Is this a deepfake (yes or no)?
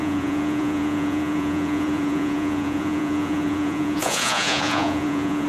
yes